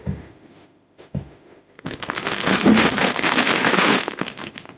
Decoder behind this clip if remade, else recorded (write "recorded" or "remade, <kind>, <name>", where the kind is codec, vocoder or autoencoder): remade, autoencoder, DAC-VAE